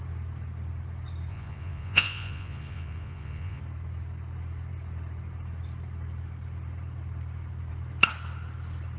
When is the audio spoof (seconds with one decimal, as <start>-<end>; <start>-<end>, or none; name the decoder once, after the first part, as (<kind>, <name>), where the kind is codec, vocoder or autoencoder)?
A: 1.3-3.6 (vocoder, Vocos)